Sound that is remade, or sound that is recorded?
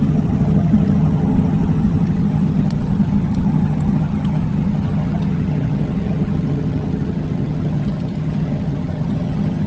remade